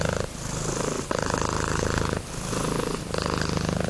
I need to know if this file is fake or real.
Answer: real